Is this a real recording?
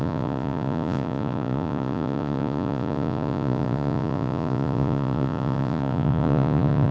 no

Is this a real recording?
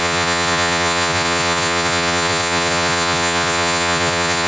no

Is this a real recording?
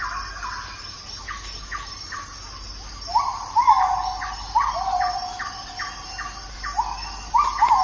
yes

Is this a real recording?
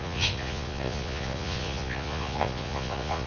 no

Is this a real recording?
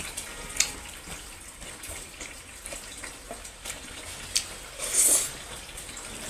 yes